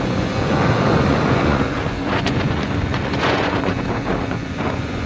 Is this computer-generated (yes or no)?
yes